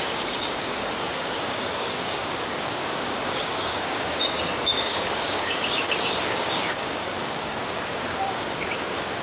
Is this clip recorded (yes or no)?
no